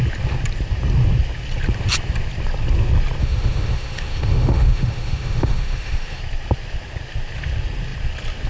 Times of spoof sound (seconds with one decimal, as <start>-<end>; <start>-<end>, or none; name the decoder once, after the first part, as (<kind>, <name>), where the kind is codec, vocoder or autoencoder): 3.2-6.2 (autoencoder, DAC-VAE)